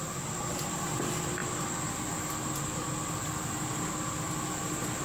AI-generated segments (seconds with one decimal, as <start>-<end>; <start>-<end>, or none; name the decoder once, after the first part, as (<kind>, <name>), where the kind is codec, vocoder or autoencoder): none